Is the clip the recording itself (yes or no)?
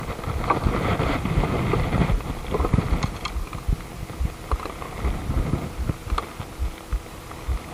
yes